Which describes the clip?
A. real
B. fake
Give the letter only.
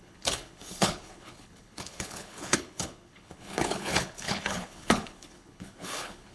B